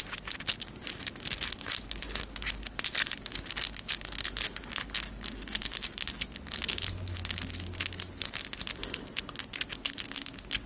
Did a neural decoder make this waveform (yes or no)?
no